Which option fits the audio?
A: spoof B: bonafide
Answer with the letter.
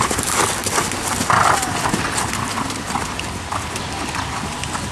B